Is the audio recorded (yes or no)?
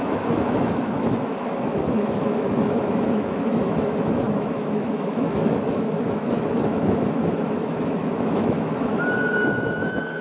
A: no